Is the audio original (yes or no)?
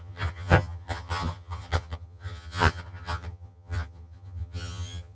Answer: no